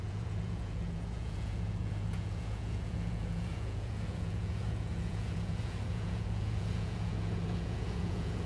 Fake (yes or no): yes